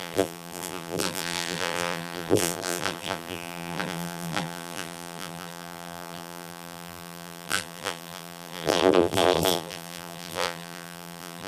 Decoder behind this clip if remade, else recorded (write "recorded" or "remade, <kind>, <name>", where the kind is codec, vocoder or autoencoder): remade, vocoder, BigVGAN v2